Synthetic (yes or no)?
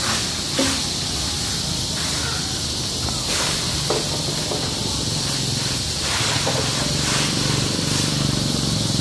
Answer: no